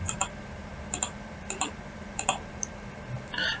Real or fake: fake